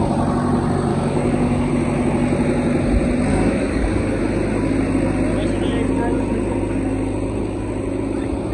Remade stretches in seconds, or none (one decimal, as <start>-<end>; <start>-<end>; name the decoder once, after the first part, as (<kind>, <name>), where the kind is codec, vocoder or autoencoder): 0.9-1.7 (codec, DAC); 3.3-4.2